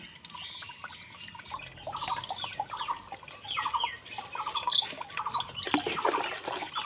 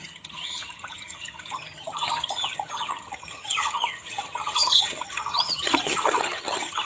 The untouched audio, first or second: first